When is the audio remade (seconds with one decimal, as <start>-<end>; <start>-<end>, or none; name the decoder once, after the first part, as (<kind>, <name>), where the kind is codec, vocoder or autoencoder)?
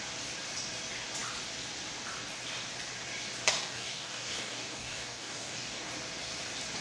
3.6-5.9 (codec, DAC)